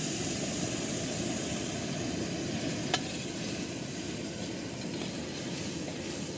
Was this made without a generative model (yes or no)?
yes